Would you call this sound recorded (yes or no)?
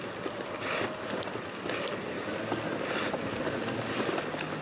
yes